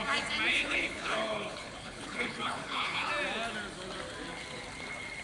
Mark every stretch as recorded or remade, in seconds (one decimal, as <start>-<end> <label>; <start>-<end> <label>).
0.0-0.5 recorded; 0.5-3.1 remade; 3.1-5.2 recorded